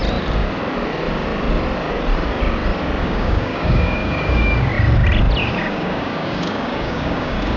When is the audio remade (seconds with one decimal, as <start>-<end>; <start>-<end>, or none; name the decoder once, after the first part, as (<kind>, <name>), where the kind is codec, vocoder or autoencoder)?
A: 3.0-4.7 (codec, DAC); 5.4-7.6